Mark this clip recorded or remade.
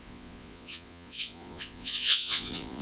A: remade